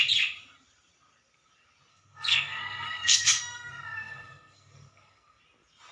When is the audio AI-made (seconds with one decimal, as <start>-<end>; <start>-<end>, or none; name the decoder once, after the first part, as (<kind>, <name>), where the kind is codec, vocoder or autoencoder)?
1.9-5.4 (codec, SNAC)